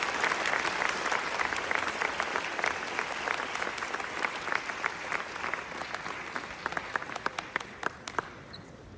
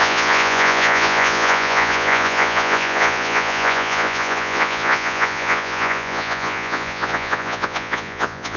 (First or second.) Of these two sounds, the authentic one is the first